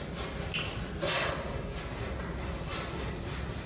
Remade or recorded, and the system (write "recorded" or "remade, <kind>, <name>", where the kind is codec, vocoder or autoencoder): recorded